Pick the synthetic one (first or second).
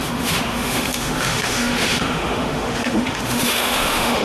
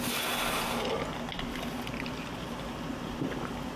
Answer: first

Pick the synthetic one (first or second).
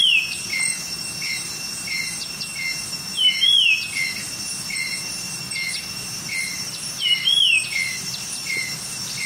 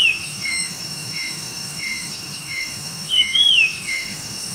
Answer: second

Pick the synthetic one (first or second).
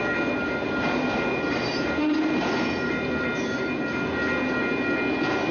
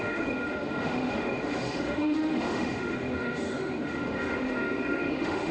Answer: second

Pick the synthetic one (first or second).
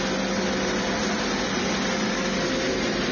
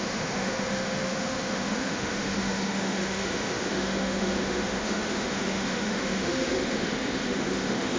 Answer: second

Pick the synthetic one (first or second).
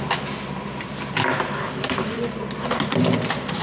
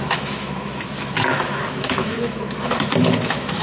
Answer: second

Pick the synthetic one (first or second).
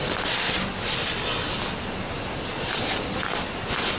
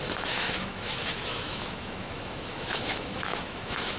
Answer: second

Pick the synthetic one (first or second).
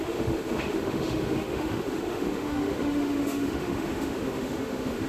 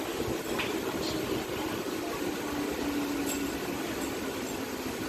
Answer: first